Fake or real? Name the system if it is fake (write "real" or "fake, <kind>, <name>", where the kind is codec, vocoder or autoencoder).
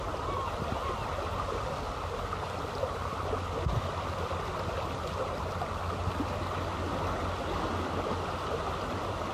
real